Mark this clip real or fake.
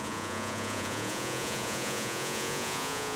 fake